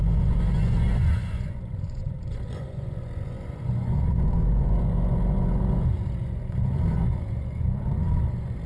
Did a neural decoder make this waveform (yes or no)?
yes